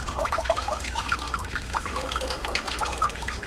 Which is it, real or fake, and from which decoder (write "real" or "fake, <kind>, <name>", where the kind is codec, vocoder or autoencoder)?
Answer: fake, autoencoder, DAC-VAE